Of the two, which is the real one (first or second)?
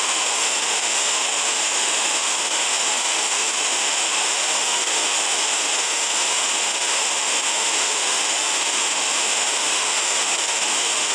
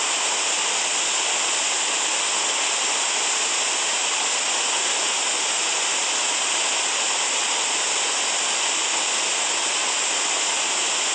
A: second